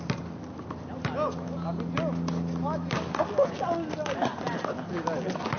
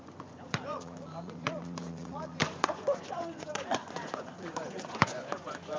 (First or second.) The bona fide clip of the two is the first